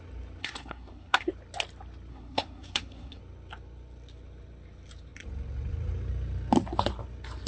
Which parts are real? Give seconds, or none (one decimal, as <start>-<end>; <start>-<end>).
0.0-0.4; 1.3-2.1; 3.2-7.5